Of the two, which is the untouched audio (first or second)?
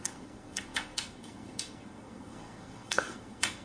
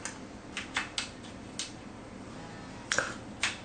second